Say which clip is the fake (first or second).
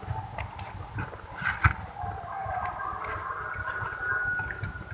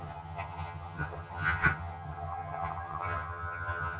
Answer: second